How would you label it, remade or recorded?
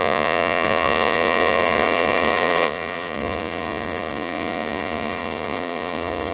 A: remade